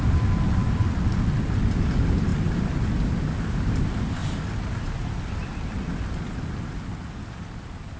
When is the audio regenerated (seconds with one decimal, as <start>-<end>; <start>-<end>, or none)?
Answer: none